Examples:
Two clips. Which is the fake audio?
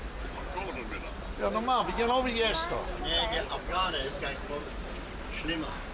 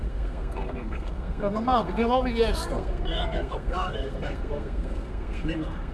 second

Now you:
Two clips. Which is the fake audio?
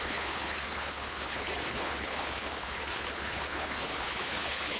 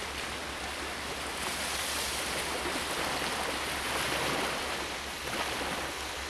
first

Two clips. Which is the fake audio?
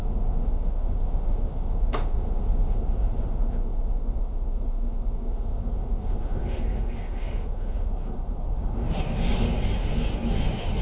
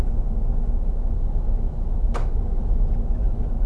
first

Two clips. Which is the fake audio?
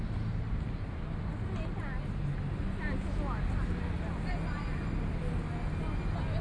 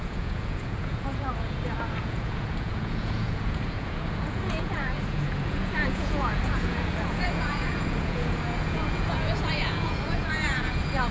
second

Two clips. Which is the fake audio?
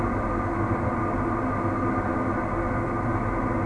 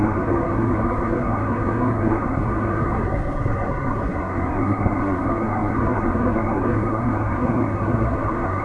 second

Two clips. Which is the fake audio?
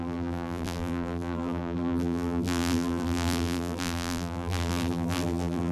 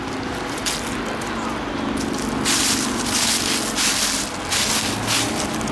first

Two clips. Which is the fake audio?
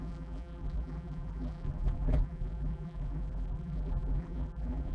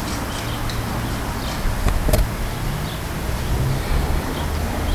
first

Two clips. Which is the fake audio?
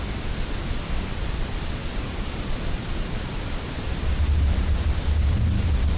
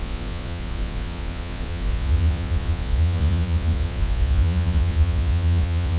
second